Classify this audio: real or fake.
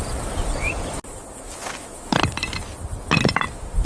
real